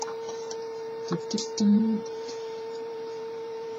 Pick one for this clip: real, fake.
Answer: fake